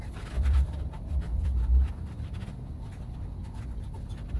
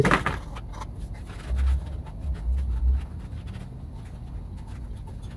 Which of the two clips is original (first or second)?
second